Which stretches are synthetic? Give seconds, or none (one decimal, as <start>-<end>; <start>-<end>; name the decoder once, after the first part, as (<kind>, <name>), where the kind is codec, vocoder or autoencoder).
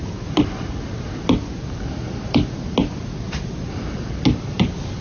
none